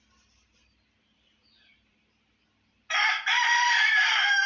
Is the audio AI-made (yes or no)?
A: yes